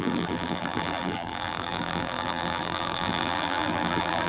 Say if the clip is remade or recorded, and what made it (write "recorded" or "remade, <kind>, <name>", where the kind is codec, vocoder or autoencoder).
remade, vocoder, BigVGAN v2